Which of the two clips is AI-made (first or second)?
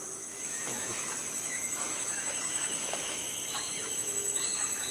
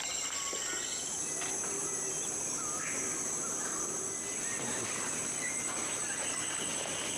first